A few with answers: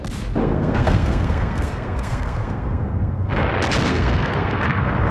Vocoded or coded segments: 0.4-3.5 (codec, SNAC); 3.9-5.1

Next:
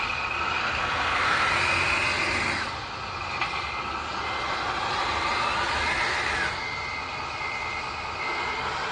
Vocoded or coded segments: 0.6-1.4 (codec, SNAC)

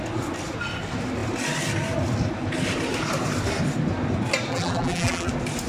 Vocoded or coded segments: 4.5-5.3 (vocoder, BigVGAN v2)

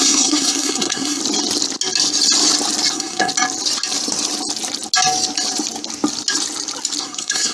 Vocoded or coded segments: 0.0-1.2 (codec, SNAC); 2.9-3.3; 7.0-7.5

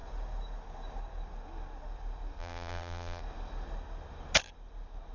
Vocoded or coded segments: 2.4-3.2 (vocoder, BigVGAN v2)

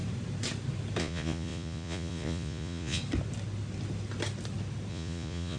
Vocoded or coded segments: 1.0-3.0 (vocoder, Vocos); 4.9-5.6